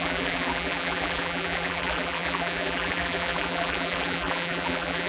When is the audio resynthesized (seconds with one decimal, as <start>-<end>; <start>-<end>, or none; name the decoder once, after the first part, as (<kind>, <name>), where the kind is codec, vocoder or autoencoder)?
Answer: 0.0-5.1 (vocoder, BigVGAN v2)